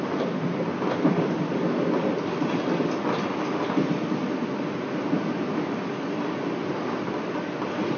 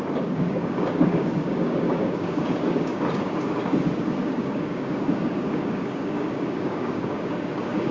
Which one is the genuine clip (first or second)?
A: first